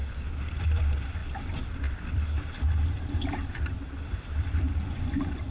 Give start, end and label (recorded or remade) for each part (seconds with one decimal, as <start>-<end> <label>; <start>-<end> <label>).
0.0-0.6 recorded; 0.6-5.5 remade